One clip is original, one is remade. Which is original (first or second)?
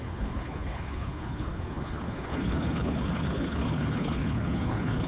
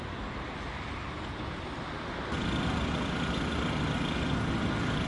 second